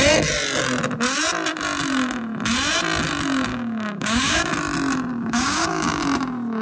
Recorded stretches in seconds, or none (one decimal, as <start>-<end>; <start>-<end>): 0.0-3.5; 4.5-5.1; 6.0-6.6